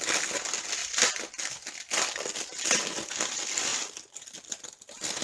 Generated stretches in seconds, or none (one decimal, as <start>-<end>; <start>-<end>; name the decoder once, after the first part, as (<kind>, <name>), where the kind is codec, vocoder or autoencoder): 0.8-3.1 (vocoder, BigVGAN v2)